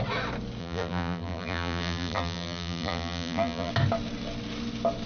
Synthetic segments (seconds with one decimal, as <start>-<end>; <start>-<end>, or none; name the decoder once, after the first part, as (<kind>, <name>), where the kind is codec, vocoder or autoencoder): 0.6-3.7 (vocoder, BigVGAN v2)